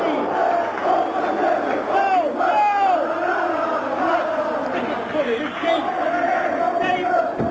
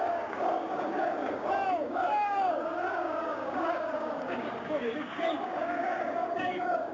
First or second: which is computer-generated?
second